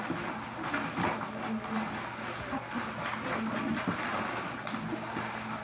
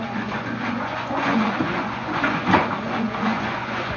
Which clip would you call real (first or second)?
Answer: first